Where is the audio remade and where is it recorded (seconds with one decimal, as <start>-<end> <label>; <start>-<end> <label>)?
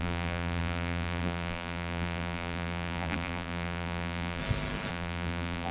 0.0-4.4 remade; 4.4-4.9 recorded; 4.9-5.7 remade